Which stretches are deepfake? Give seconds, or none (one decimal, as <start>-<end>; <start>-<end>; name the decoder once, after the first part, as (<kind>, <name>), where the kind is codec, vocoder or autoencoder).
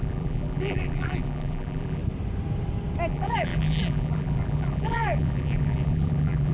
0.0-2.0 (vocoder, BigVGAN v2); 3.1-6.5